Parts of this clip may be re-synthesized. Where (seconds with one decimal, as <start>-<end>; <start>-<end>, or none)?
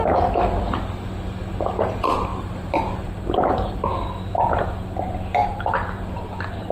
2.3-3.8; 5.4-6.7